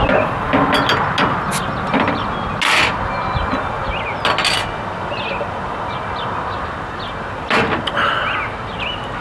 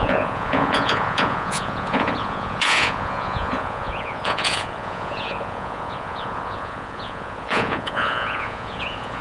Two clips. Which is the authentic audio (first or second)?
first